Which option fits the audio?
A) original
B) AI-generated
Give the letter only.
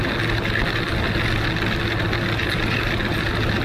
A